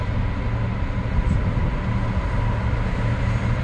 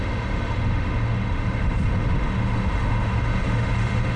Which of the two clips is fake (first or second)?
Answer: second